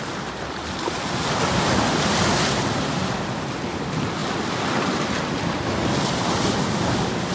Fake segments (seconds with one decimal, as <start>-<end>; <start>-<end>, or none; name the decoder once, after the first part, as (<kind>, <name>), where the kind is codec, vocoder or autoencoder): none